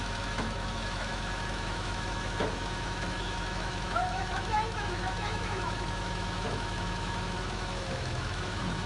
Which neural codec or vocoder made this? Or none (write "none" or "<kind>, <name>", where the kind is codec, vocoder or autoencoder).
autoencoder, DAC-VAE